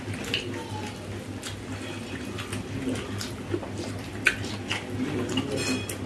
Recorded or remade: recorded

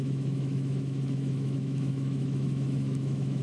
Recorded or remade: remade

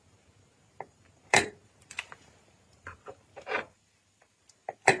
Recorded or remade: remade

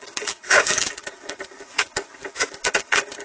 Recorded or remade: remade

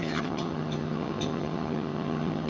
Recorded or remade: remade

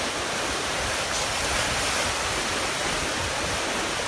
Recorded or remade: recorded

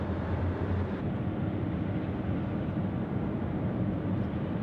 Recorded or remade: remade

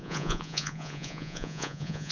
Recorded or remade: remade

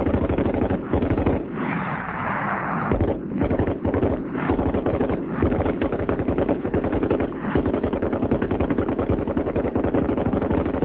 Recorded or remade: remade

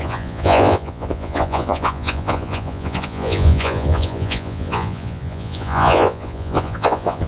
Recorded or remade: remade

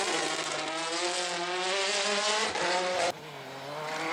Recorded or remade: recorded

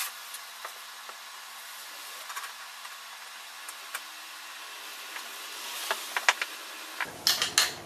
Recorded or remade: recorded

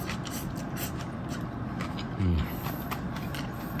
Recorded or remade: recorded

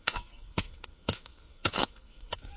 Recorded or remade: remade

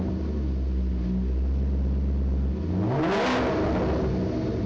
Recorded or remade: recorded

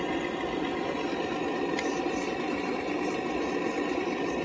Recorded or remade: recorded